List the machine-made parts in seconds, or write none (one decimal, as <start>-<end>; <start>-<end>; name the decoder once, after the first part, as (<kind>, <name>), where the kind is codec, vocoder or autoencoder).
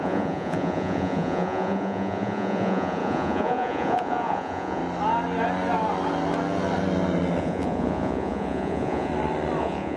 0.0-4.8 (vocoder, Vocos); 7.4-9.1; 9.6-10.0